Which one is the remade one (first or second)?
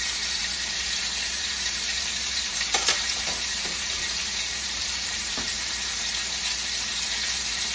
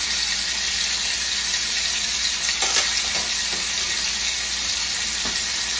first